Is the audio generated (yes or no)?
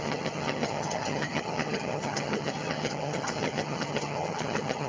yes